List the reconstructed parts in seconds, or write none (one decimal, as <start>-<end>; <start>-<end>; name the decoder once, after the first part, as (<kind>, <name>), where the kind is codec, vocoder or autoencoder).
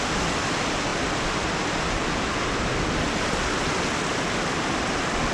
none